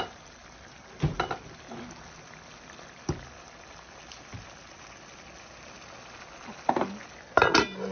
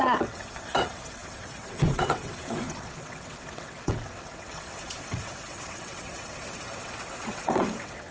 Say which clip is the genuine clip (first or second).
first